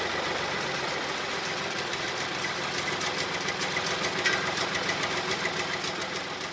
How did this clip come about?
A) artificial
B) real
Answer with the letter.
B